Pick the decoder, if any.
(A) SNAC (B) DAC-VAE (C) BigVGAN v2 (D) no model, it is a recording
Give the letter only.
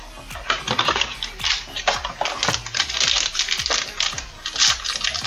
D